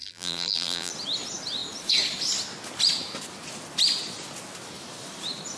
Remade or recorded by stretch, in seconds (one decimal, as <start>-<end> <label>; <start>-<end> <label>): 0.0-0.9 remade; 0.9-5.6 recorded